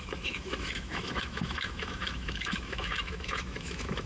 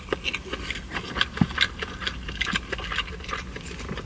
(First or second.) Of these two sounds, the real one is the second